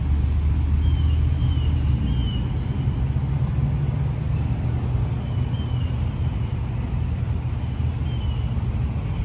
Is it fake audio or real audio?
real